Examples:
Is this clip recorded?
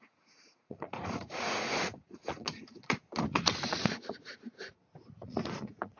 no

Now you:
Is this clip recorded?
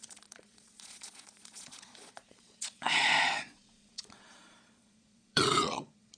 no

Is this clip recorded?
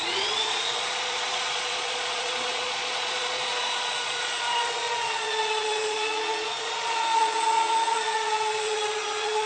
no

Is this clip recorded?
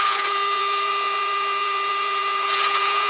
no